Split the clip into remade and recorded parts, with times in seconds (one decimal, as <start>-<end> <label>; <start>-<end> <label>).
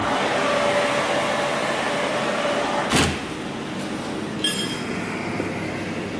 0.0-6.2 recorded